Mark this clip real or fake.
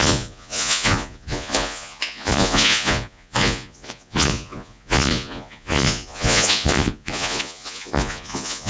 fake